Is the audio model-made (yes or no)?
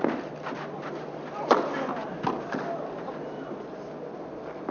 no